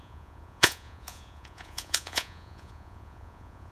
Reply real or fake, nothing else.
fake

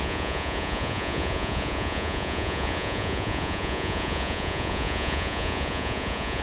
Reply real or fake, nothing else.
fake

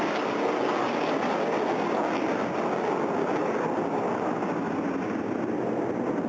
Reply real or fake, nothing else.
real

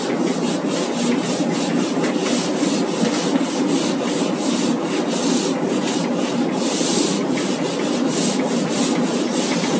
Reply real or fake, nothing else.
real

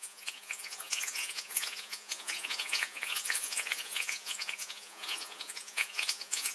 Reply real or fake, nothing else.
fake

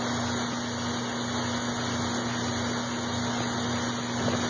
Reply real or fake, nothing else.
real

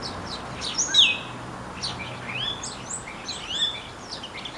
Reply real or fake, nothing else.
real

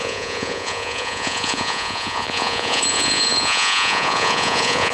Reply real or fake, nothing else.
fake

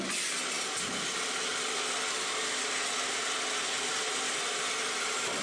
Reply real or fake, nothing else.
real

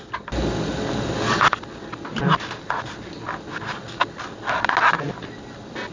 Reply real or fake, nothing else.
real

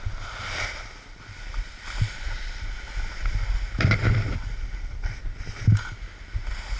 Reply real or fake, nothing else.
real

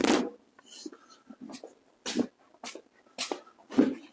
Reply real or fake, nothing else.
real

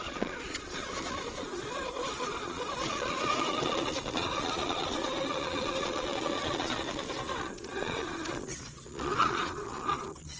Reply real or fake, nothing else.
fake